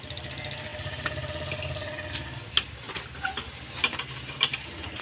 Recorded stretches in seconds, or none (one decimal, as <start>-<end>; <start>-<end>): 0.0-5.0